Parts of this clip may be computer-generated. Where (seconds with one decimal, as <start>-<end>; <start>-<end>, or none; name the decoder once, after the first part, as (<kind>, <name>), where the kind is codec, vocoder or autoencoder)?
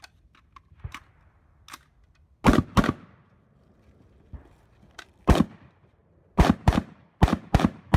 6.0-8.0 (vocoder, BigVGAN v2)